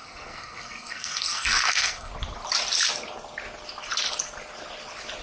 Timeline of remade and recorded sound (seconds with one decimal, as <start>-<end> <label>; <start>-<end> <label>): 0.0-2.1 remade; 2.1-5.2 recorded

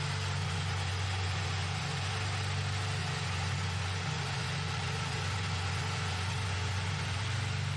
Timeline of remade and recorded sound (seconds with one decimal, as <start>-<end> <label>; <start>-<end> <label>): 0.0-0.4 recorded; 0.4-2.1 remade; 2.1-3.0 recorded; 3.0-7.2 remade; 7.2-7.8 recorded

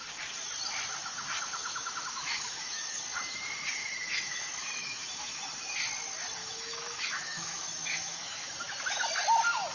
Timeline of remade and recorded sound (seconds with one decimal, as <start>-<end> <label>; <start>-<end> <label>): 0.0-1.6 recorded; 1.6-3.0 remade; 3.0-3.8 recorded; 3.8-5.4 remade; 5.4-6.4 recorded; 6.4-8.5 remade; 8.5-9.7 recorded

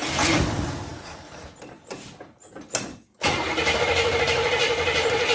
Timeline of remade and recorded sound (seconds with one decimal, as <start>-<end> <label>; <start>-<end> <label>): 0.0-5.3 recorded

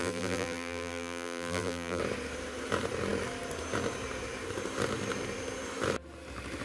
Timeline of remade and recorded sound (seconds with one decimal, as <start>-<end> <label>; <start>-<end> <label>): 0.0-2.0 remade; 2.0-6.6 recorded

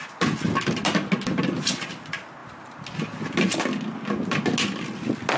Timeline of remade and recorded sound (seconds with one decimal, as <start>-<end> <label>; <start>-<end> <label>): 0.0-5.4 recorded

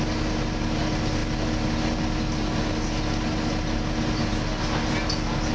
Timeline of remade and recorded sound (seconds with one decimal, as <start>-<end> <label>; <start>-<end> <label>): 0.0-5.5 recorded